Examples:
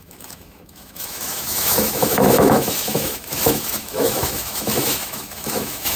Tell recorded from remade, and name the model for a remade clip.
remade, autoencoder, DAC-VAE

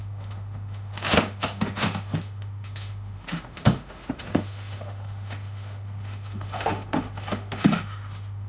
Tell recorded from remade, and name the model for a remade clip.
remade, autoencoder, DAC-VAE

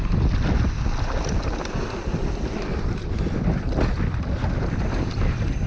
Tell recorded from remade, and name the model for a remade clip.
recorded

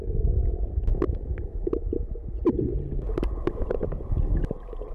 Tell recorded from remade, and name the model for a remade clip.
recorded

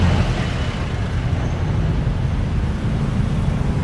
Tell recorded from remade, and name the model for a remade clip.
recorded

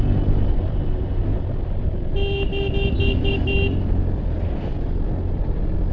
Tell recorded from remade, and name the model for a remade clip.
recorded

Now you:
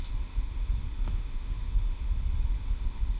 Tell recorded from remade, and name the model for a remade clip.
remade, autoencoder, DAC-VAE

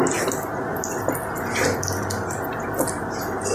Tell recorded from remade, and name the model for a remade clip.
recorded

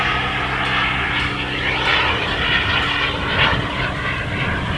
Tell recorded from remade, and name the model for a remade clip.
recorded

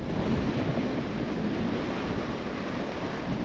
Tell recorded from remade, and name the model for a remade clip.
recorded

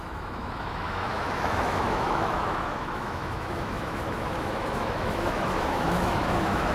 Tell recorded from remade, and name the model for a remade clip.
remade, autoencoder, DAC-VAE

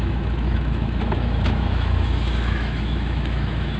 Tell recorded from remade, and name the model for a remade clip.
remade, autoencoder, DAC-VAE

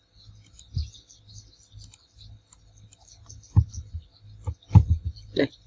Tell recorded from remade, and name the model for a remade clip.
recorded